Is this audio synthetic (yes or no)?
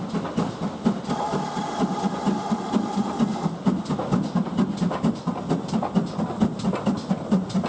no